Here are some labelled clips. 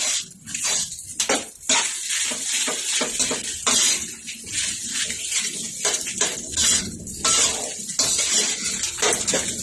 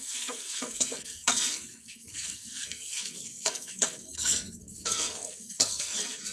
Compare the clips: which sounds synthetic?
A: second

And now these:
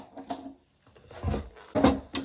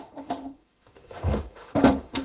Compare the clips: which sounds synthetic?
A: second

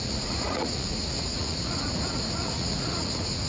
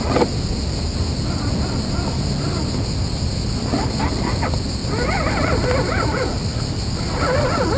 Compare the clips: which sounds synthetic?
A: first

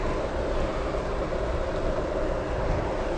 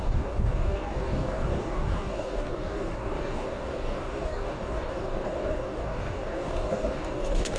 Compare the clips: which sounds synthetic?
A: second